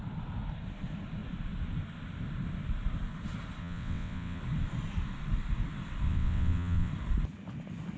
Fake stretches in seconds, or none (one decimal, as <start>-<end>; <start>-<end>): 3.6-4.4; 6.1-6.9